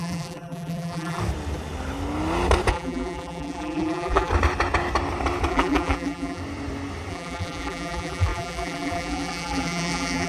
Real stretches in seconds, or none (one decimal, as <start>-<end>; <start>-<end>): 1.2-2.7; 4.3-5.5; 6.4-7.1

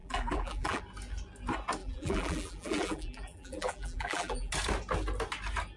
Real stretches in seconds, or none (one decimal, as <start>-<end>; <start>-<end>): 0.8-1.8; 4.5-5.8

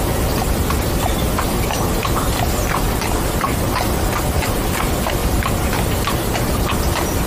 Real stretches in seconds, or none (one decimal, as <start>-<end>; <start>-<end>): 5.2-5.8

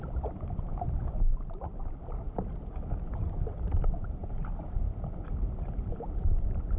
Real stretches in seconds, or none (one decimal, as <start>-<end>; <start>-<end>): 4.2-5.1